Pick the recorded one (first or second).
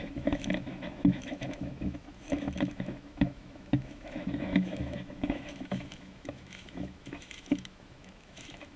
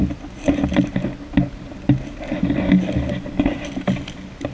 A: second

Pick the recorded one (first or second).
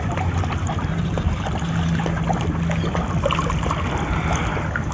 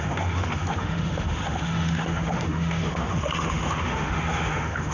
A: first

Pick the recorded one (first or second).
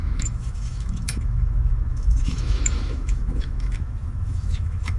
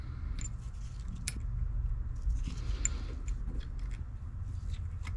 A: second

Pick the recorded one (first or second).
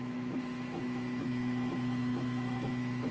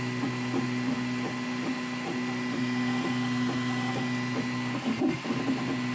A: second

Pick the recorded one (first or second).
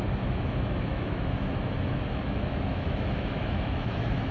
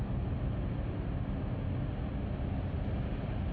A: second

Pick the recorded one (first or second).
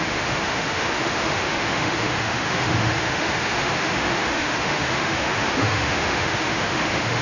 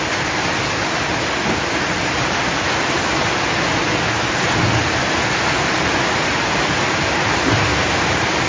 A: second